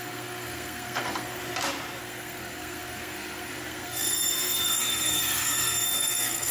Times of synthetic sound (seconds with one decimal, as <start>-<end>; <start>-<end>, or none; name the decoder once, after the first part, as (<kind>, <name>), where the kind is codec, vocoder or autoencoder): 0.0-1.4 (codec, SNAC); 2.0-6.5